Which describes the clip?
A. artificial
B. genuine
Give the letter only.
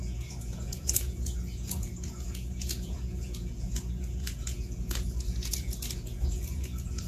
A